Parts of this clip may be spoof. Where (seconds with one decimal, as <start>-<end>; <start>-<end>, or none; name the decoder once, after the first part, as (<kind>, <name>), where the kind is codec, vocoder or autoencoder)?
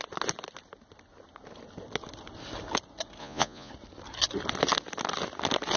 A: 3.2-3.7 (vocoder, Vocos)